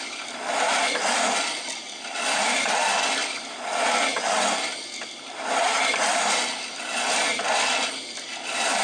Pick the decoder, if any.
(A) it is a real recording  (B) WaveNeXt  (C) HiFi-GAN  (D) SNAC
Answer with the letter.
A